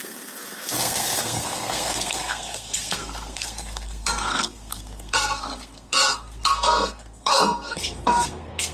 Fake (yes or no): yes